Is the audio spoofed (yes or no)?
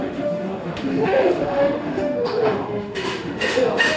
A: yes